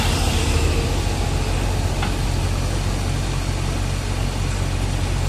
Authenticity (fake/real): real